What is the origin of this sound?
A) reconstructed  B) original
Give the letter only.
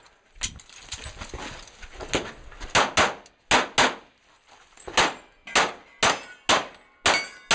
B